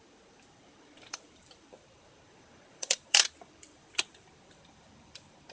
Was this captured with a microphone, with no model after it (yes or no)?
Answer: no